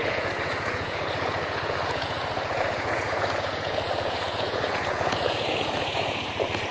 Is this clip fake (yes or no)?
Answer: yes